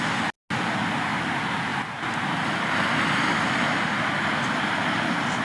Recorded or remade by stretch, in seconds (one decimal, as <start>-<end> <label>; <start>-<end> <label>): 0.0-1.7 recorded; 1.7-4.9 remade; 4.9-5.4 recorded

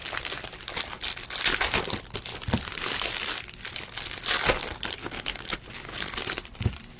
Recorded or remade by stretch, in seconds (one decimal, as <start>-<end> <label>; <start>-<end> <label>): 0.0-7.0 recorded

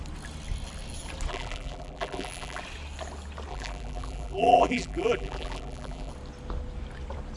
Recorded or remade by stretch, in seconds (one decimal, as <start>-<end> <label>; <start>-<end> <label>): 0.0-1.3 recorded; 1.3-2.6 remade; 2.6-3.5 recorded; 3.5-6.1 remade; 6.1-7.4 recorded

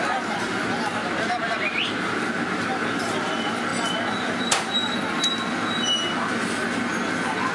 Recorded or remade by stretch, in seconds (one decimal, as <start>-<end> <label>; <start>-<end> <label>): 0.0-1.0 recorded; 1.0-1.8 remade; 1.8-7.5 recorded